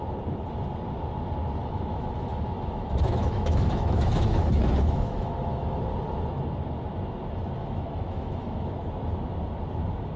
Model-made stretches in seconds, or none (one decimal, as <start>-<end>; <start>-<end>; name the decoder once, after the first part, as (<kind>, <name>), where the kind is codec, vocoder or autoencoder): 1.6-5.8 (autoencoder, DAC-VAE); 7.6-8.8